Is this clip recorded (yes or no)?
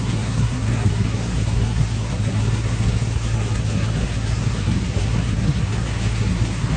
no